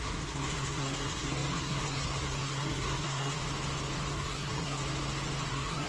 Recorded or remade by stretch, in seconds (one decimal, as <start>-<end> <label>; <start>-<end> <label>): 0.0-3.4 remade; 3.4-4.1 recorded; 4.1-4.8 remade; 4.8-5.5 recorded; 5.5-5.9 remade